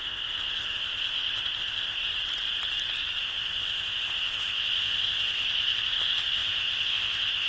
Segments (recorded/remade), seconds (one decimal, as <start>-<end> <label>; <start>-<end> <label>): 0.0-2.0 remade; 2.0-3.2 recorded; 3.2-7.5 remade